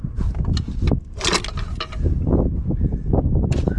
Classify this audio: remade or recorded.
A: recorded